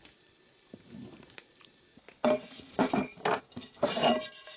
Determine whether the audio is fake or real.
real